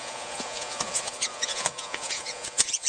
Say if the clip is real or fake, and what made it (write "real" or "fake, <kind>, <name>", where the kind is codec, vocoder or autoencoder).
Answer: fake, vocoder, Vocos